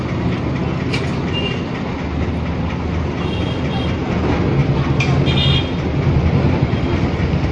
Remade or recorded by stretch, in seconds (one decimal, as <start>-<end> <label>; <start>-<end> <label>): 0.0-7.5 recorded